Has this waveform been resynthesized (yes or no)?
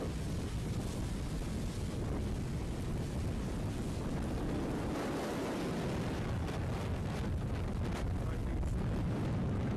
no